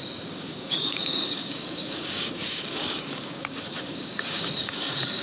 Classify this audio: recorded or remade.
remade